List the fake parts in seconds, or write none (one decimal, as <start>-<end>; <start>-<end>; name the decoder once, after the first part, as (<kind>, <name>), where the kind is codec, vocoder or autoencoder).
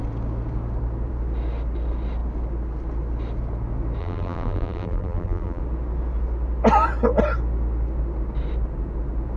4.0-5.6 (vocoder, BigVGAN v2)